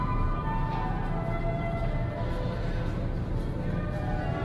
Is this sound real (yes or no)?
yes